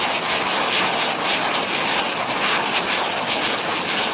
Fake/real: real